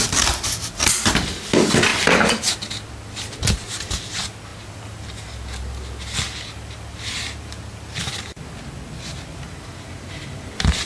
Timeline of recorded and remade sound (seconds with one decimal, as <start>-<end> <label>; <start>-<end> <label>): 0.0-10.8 recorded